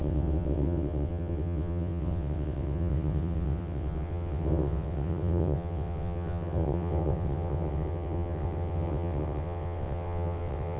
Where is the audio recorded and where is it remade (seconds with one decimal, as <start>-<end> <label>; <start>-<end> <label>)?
0.0-10.8 remade